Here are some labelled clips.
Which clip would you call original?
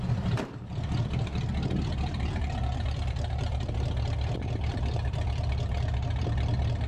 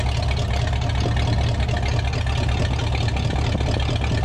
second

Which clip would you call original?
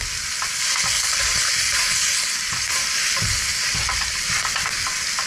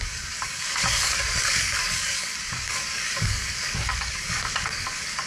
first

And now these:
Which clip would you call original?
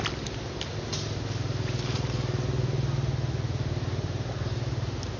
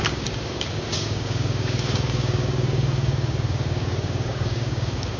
first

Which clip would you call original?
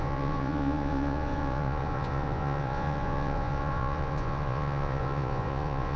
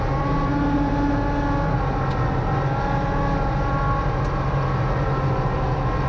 second